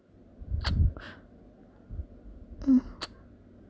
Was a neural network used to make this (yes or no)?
no